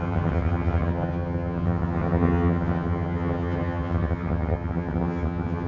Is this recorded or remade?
remade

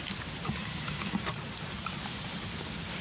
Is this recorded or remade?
recorded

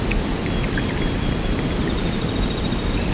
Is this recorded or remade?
recorded